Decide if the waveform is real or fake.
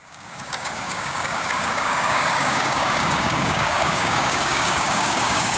fake